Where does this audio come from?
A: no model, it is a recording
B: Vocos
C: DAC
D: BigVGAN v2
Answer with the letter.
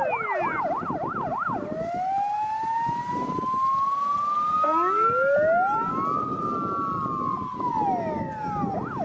A